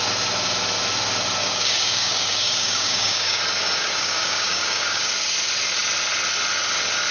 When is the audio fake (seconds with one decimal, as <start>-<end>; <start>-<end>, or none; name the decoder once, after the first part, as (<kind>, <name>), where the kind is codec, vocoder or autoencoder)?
1.4-3.4 (codec, DAC); 3.8-5.1